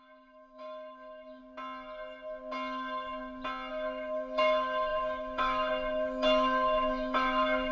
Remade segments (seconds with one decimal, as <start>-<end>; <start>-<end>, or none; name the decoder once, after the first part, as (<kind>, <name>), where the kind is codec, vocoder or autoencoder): 0.0-1.4 (autoencoder, DAC-VAE); 3.7-7.7

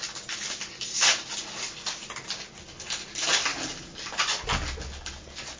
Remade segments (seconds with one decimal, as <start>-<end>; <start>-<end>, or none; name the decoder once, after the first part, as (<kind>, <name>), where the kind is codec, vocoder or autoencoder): none

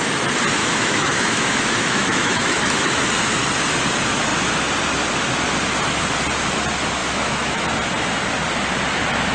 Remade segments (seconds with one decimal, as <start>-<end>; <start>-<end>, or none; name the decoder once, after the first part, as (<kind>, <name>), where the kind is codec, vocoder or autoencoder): 0.6-3.1 (autoencoder, DAC-VAE); 7.0-7.6

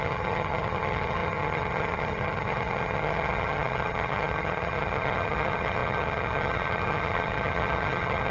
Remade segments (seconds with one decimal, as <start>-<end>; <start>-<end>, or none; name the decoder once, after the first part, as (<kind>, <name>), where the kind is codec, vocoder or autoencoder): 0.0-8.3 (vocoder, HiFi-GAN)

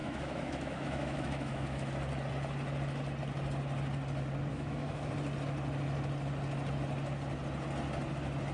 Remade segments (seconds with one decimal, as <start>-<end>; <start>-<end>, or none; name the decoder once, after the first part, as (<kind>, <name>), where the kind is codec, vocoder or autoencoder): 0.0-1.9 (autoencoder, DAC-VAE); 4.5-5.1

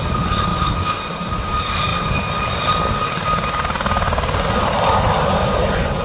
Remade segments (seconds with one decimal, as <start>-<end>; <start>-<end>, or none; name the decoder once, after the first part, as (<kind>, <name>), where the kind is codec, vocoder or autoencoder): 0.0-0.5 (vocoder, BigVGAN v2); 1.3-1.9; 4.6-6.0